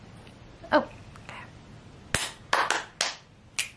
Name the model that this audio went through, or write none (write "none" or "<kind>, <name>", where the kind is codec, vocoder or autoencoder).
none